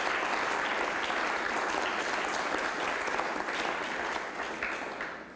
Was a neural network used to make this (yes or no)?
no